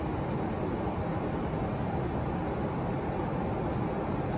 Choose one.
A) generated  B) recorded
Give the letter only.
B